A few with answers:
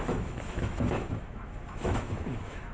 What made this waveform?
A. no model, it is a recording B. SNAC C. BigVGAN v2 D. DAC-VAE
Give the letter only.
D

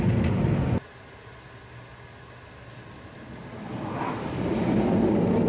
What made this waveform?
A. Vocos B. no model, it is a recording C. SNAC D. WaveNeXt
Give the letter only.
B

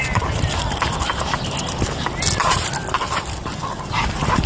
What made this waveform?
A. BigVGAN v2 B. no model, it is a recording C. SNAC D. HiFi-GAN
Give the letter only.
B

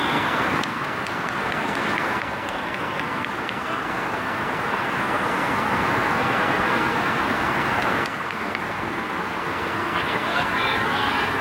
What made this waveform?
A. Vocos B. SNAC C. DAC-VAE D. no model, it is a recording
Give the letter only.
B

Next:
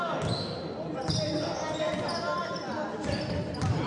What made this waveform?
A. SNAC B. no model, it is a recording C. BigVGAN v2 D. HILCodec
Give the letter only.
B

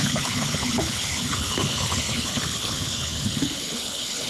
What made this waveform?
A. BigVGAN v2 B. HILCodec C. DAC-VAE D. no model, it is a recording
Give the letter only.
B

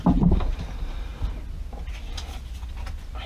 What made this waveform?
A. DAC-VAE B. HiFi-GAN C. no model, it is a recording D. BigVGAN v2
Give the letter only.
C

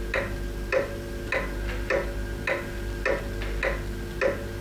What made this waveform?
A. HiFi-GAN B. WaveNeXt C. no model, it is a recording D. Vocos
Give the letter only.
C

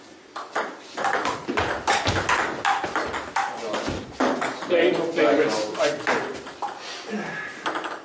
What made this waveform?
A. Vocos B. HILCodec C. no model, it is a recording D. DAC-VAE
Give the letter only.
C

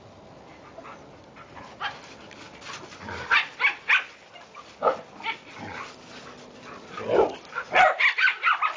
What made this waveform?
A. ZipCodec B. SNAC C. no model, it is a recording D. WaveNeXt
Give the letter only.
C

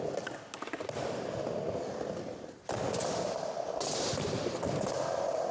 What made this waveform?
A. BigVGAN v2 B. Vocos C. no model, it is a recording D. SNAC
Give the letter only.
C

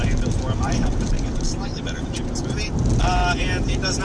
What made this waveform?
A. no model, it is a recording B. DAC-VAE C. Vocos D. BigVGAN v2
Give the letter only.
A